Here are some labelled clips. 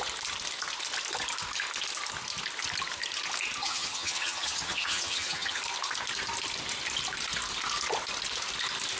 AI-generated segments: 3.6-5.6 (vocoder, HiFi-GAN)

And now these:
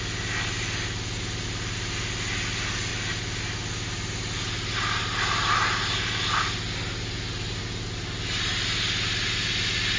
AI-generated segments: none

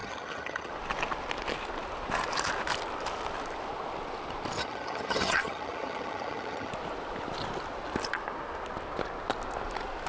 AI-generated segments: 0.0-0.7 (vocoder, HiFi-GAN); 4.6-6.7